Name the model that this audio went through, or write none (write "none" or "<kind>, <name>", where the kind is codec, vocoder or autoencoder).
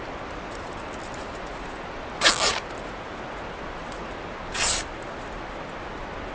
none